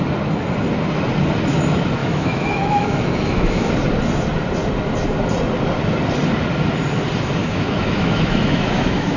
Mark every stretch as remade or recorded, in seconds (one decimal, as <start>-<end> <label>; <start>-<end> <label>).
0.0-2.0 recorded; 2.0-3.7 remade; 3.7-7.4 recorded; 7.4-9.2 remade